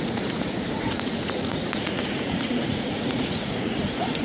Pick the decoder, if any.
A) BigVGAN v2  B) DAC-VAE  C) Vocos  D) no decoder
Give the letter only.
C